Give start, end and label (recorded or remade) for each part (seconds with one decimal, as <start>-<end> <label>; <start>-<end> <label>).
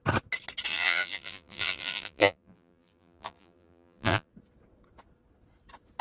0.0-0.7 recorded; 0.7-4.3 remade; 4.3-6.0 recorded